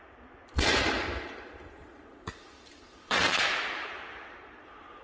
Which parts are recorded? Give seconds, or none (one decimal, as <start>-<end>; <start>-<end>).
0.0-1.8; 4.6-5.0